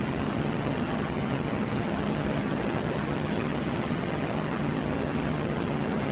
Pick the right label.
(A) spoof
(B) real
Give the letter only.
A